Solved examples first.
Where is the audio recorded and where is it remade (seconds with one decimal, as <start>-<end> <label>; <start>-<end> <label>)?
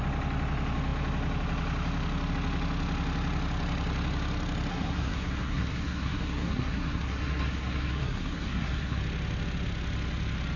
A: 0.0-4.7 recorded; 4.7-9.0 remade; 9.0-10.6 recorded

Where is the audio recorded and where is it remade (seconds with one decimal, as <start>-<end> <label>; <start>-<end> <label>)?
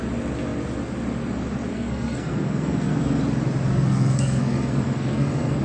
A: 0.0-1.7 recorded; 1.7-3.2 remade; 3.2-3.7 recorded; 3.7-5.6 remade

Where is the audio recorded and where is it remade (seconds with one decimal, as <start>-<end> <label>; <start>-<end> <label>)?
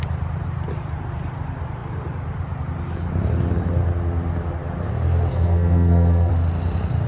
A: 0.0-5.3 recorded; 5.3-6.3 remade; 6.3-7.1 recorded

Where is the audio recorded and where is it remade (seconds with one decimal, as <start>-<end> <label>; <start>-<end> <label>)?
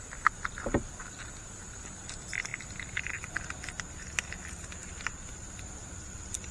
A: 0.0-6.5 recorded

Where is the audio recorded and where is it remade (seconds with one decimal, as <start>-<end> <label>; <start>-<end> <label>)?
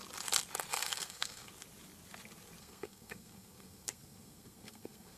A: 0.0-0.7 recorded; 0.7-1.5 remade; 1.5-2.6 recorded; 2.6-5.2 remade